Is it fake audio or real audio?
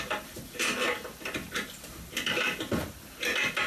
real